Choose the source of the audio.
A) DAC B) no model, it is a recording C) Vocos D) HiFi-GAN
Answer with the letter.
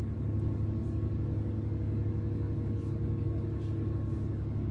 A